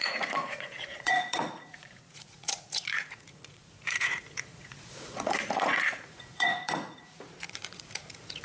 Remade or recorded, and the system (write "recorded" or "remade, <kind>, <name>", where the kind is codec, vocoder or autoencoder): remade, vocoder, Vocos